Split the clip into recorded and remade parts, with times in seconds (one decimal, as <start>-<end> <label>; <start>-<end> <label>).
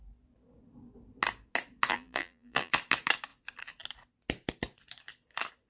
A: 0.0-1.9 recorded; 1.9-2.7 remade; 2.7-5.7 recorded